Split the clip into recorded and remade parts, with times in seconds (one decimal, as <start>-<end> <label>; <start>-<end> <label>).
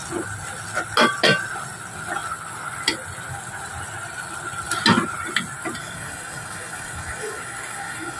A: 0.0-5.8 recorded; 5.8-8.2 remade